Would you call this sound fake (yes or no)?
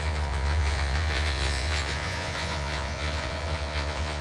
yes